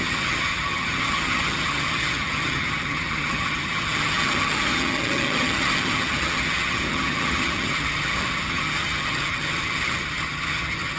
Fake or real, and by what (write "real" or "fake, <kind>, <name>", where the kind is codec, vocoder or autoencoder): fake, vocoder, HiFi-GAN